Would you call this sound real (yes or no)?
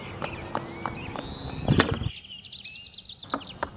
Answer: yes